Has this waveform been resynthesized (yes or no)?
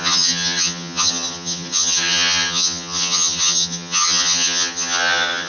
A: yes